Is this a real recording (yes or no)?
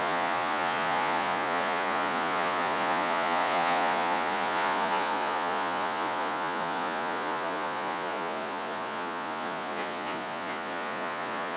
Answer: no